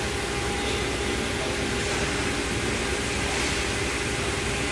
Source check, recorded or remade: recorded